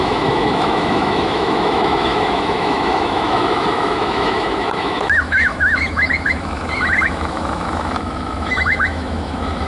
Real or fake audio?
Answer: fake